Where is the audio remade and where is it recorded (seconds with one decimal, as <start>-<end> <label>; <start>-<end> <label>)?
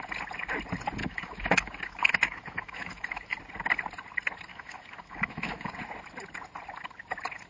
0.0-1.0 recorded; 1.0-3.4 remade; 3.4-4.5 recorded; 4.5-5.7 remade; 5.7-7.5 recorded